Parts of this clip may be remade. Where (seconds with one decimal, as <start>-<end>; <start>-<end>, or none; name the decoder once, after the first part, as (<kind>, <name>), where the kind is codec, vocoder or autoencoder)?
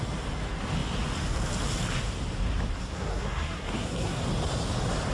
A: 2.8-4.2 (codec, SNAC)